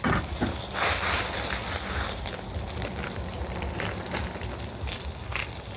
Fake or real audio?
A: real